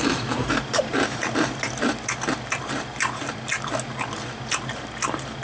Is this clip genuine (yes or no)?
yes